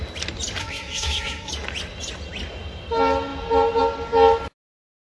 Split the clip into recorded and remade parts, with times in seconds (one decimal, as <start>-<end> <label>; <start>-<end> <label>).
0.0-0.6 recorded; 0.6-1.5 remade; 1.5-5.0 recorded